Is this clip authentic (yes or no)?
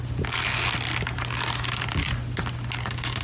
yes